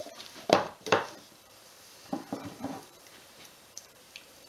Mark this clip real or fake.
fake